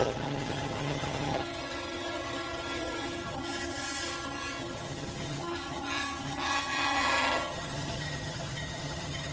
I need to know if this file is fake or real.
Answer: fake